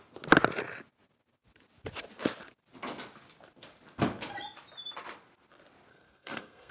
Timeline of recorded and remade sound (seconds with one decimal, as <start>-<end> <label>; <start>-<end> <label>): 0.0-5.9 recorded; 5.9-6.7 remade